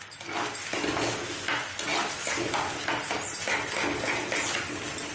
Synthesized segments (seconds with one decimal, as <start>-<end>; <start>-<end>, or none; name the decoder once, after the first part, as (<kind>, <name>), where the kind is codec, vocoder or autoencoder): none